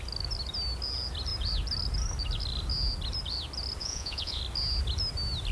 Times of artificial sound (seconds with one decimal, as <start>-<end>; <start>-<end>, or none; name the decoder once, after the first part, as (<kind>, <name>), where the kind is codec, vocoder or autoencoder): 3.8-4.4 (vocoder, Vocos)

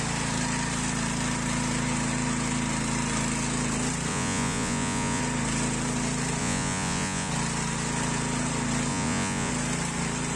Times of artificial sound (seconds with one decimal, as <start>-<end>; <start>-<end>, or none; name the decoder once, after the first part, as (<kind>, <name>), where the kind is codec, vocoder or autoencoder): 4.1-5.2 (vocoder, Vocos); 6.4-7.3; 8.9-9.5

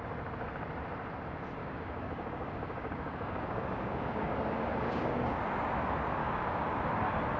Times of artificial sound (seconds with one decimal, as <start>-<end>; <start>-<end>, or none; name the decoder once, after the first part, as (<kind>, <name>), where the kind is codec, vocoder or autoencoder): 1.6-5.4 (codec, DAC); 6.2-6.8

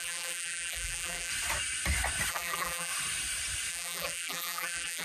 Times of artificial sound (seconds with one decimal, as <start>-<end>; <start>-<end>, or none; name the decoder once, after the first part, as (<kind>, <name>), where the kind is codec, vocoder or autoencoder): 0.0-1.3 (vocoder, BigVGAN v2); 2.3-2.9; 3.7-5.0